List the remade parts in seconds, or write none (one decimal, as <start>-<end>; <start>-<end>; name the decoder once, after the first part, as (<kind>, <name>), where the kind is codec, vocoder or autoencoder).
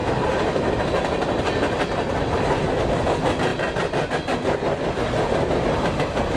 0.0-0.8 (vocoder, BigVGAN v2)